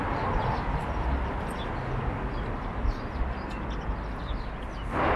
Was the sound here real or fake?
real